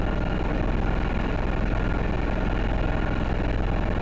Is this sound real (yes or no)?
yes